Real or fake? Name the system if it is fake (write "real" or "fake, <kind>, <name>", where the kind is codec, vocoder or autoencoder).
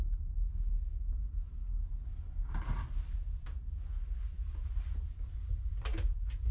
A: real